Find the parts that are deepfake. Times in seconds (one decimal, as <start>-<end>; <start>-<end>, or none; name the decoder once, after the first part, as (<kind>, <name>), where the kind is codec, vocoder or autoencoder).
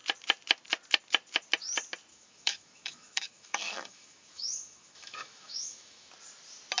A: 2.1-6.1 (autoencoder, DAC-VAE)